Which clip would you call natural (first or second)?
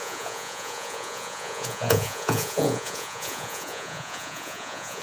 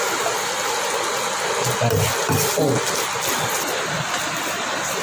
second